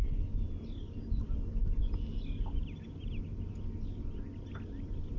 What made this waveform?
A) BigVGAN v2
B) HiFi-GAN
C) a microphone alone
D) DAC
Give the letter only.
C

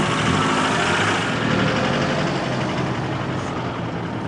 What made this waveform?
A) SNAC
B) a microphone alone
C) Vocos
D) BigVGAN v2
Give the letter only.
B